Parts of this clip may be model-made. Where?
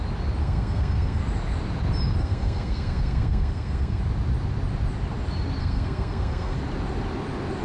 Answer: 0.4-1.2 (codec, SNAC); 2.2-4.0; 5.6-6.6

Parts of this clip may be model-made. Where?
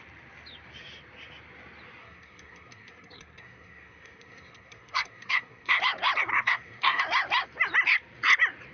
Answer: 2.0-5.8 (codec, SNAC); 6.3-7.0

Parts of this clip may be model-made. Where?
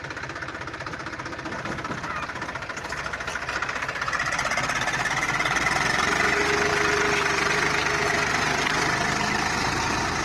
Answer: none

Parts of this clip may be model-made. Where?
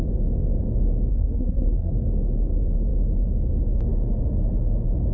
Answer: 1.1-1.9 (codec, SNAC)